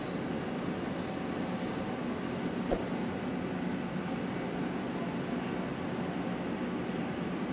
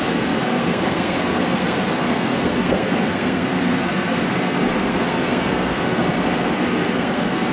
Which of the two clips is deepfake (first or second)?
second